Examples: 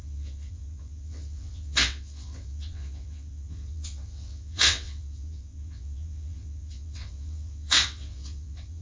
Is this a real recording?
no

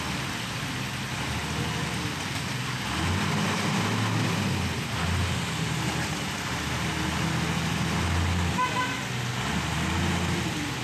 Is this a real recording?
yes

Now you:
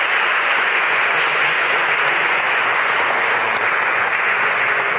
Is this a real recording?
no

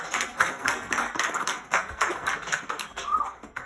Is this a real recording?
no